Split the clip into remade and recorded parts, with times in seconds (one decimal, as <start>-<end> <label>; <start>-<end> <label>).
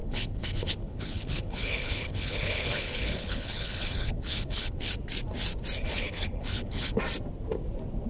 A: 0.0-4.9 remade; 4.9-5.9 recorded; 5.9-7.0 remade; 7.0-8.1 recorded